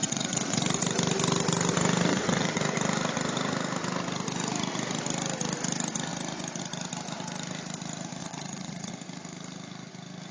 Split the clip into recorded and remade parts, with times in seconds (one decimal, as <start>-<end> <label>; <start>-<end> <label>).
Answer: 0.0-0.6 remade; 0.6-2.1 recorded; 2.1-2.6 remade; 2.6-8.2 recorded; 8.2-8.9 remade; 8.9-10.3 recorded